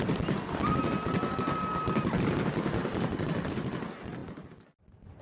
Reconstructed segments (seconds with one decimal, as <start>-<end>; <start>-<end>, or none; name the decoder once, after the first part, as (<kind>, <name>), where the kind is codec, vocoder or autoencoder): none

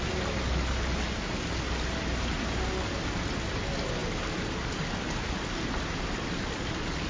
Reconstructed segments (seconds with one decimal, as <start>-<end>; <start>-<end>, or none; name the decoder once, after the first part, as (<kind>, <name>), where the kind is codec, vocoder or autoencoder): none

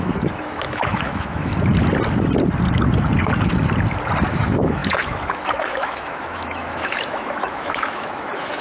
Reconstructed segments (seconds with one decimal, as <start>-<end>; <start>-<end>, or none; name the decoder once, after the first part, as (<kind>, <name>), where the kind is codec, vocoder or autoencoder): 0.0-1.5 (autoencoder, DAC-VAE); 4.3-8.6

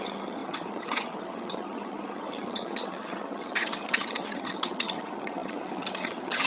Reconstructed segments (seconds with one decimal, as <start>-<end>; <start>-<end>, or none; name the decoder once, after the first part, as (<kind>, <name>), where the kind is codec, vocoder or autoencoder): 0.0-6.5 (vocoder, HiFi-GAN)

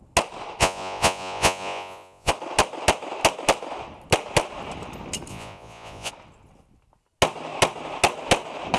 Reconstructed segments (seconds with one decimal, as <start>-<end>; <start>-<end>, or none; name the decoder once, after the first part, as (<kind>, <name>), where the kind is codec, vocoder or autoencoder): 0.6-2.3 (vocoder, Vocos); 5.3-6.1

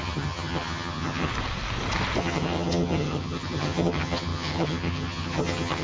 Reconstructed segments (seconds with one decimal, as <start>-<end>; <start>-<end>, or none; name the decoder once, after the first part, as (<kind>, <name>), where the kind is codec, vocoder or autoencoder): 0.0-1.3 (vocoder, HiFi-GAN); 2.2-5.8

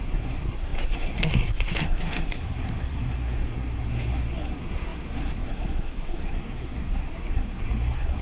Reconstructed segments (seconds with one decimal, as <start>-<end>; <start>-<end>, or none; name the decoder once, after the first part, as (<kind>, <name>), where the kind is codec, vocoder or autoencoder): 0.0-8.2 (codec, SNAC)

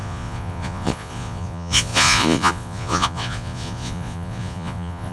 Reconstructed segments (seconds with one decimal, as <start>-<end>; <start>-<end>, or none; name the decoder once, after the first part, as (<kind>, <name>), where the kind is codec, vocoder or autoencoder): 0.0-5.1 (vocoder, Vocos)